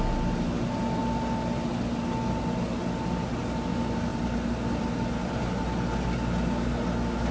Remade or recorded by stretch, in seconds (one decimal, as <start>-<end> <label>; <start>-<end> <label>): 0.0-7.3 recorded